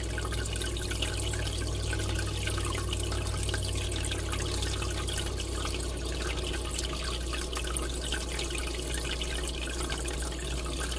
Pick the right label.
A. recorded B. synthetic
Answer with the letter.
A